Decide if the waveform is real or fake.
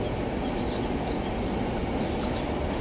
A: real